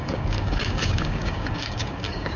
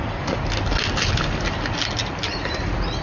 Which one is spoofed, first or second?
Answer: first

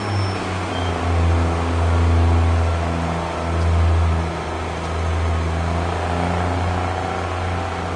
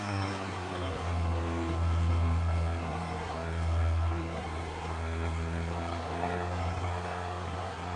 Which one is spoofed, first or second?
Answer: second